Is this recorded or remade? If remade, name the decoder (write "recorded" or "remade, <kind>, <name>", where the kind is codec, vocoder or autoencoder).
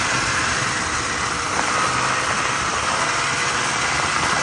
remade, vocoder, BigVGAN v2